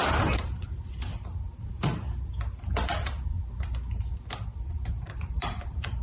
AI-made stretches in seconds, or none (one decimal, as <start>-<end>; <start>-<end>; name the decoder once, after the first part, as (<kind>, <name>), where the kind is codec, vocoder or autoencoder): 0.0-1.1 (vocoder, BigVGAN v2); 4.7-6.0